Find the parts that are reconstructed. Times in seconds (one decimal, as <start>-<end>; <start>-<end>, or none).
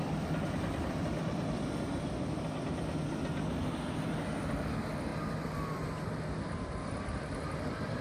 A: 0.0-5.1; 6.4-8.0